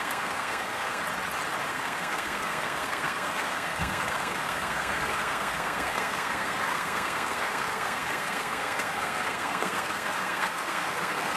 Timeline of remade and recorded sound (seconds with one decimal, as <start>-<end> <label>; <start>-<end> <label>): 0.0-1.0 remade; 1.0-1.7 recorded; 1.7-11.4 remade